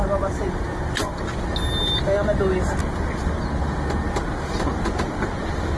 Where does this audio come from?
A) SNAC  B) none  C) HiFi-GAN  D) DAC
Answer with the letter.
B